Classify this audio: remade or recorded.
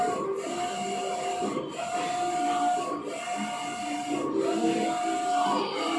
recorded